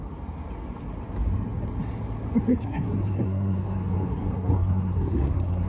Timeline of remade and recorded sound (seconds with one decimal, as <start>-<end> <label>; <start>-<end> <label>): 0.0-2.5 recorded; 2.5-5.7 remade